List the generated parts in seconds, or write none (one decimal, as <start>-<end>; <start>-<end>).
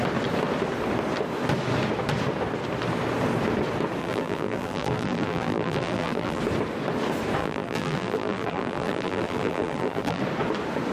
4.0-6.4; 7.4-10.2